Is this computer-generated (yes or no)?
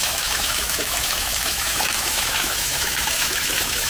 yes